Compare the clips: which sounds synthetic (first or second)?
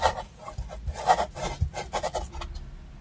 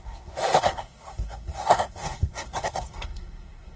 second